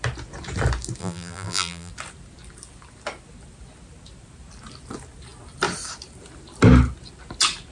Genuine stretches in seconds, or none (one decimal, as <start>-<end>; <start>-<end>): 0.0-1.0; 1.9-7.7